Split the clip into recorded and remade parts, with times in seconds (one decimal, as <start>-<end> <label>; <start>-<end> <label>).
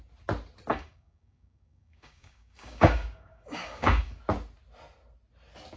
0.0-0.7 recorded; 0.7-4.2 remade; 4.2-5.8 recorded